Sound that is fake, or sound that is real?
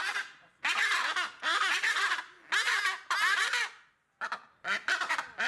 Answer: real